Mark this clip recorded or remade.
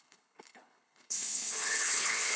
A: remade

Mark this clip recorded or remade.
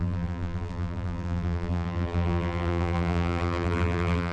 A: remade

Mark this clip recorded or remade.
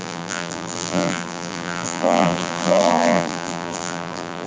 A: remade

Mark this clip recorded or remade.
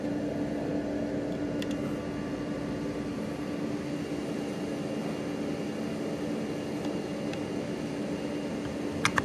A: recorded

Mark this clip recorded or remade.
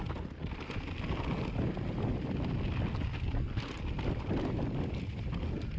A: recorded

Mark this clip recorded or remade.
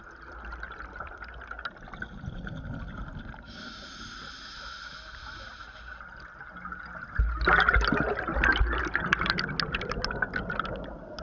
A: recorded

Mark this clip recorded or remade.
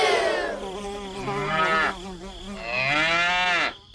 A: recorded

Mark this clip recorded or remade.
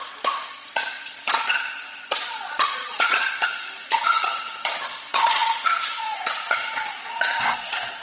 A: remade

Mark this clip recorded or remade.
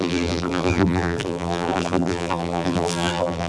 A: remade